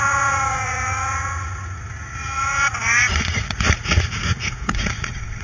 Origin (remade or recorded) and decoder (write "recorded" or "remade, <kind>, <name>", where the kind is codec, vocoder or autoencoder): remade, vocoder, Vocos